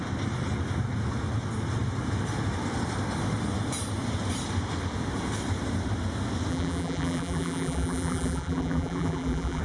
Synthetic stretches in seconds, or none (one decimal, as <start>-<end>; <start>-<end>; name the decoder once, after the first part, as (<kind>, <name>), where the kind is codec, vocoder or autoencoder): 6.5-9.6 (vocoder, BigVGAN v2)